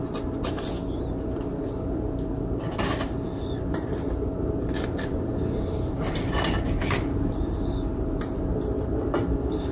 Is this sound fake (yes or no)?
no